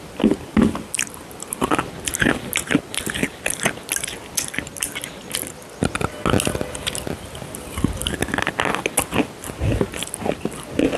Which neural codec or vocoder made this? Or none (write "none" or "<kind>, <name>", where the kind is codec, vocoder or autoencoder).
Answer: none